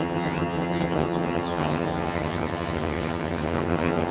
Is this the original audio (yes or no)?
no